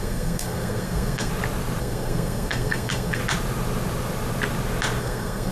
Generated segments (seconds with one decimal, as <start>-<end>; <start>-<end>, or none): 0.0-1.3; 1.8-3.2; 5.0-5.5